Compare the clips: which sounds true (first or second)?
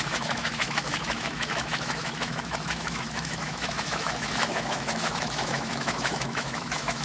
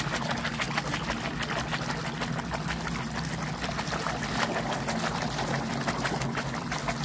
second